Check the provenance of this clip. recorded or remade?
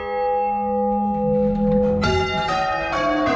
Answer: recorded